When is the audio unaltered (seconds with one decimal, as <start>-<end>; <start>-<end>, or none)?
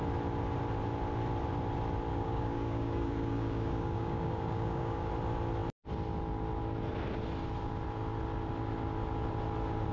0.0-2.1; 5.1-9.9